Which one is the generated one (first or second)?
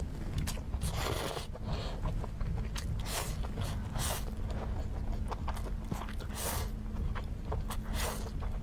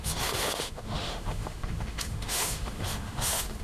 second